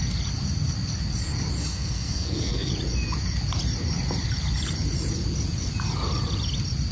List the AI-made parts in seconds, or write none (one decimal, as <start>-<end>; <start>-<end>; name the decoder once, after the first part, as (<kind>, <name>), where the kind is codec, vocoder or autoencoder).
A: 1.6-2.7 (codec, SNAC)